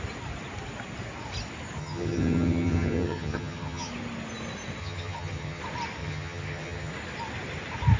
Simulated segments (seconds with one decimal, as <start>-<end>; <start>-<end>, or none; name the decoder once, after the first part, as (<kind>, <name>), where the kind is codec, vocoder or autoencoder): 1.8-3.9 (vocoder, HiFi-GAN); 4.8-5.6; 6.0-6.9